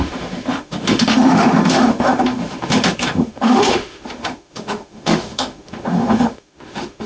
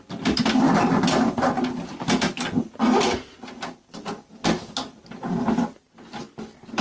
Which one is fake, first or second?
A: first